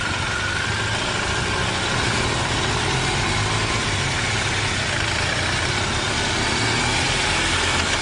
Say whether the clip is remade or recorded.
recorded